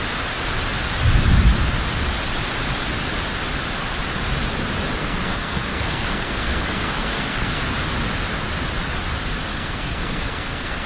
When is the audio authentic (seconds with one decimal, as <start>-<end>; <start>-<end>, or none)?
0.0-5.0; 7.6-9.5